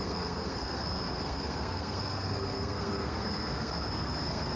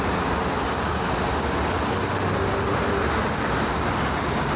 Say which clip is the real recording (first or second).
second